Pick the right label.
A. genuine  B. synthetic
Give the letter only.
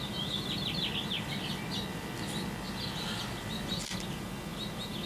A